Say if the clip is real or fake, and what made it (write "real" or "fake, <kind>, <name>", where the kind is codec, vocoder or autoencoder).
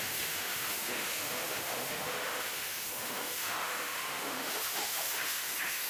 fake, autoencoder, DAC-VAE